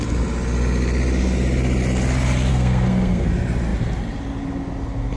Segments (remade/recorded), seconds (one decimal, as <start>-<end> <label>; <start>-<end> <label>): 0.0-2.5 recorded; 2.5-3.3 remade; 3.3-5.2 recorded